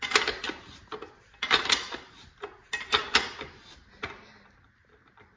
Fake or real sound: real